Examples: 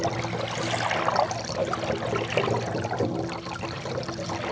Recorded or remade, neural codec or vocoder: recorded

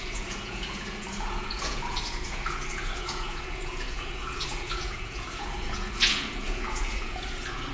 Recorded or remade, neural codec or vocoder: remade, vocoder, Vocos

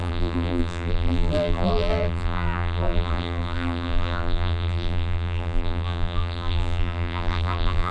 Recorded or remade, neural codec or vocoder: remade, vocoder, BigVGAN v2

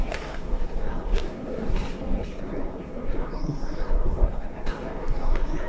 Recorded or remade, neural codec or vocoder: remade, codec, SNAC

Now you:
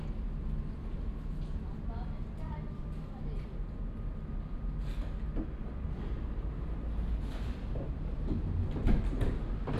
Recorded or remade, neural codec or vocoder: recorded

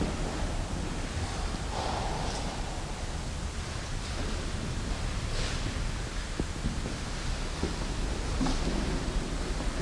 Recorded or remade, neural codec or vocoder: recorded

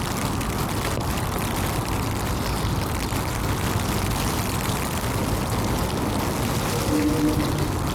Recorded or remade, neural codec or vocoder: recorded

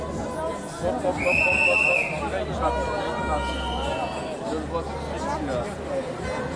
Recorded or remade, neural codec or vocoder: recorded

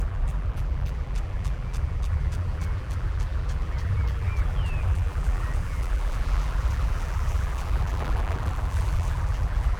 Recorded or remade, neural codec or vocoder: remade, vocoder, BigVGAN v2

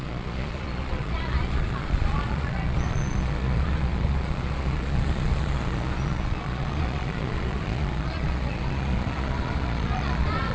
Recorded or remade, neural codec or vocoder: remade, vocoder, Vocos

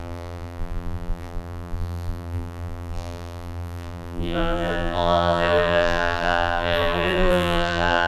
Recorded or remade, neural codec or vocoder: remade, vocoder, BigVGAN v2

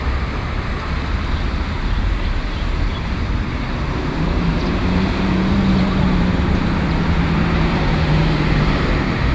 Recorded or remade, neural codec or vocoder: remade, vocoder, BigVGAN v2